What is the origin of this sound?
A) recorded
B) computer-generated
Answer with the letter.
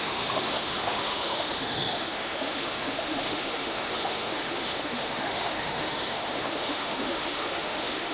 B